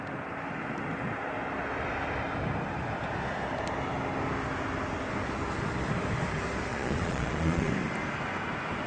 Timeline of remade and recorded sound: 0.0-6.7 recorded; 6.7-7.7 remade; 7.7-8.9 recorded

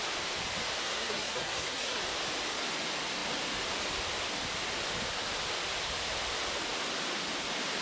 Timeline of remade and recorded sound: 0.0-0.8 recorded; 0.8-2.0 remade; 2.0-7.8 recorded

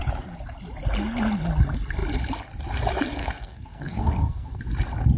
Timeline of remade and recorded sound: 0.0-3.2 recorded; 3.2-4.6 remade; 4.6-5.2 recorded